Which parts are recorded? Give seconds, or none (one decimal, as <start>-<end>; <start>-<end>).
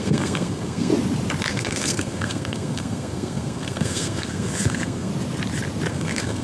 0.9-1.5; 5.1-5.9